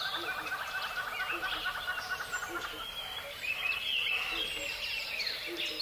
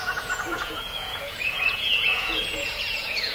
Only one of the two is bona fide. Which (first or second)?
first